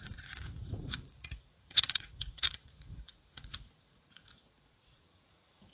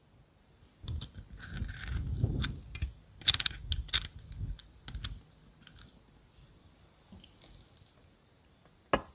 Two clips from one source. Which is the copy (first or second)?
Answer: first